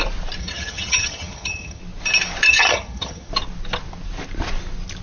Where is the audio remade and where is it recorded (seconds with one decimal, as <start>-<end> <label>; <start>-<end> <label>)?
0.0-0.4 recorded; 0.4-1.8 remade; 1.8-2.5 recorded; 2.5-3.3 remade; 3.3-5.0 recorded